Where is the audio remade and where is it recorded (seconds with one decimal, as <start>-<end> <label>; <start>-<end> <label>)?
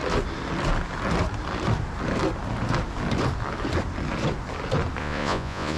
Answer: 0.0-5.0 recorded; 5.0-5.8 remade